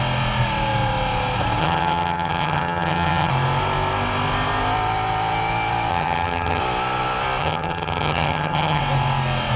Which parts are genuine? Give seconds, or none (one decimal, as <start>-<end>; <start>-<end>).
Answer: 0.0-1.6; 3.3-5.9; 6.6-7.4; 8.8-9.6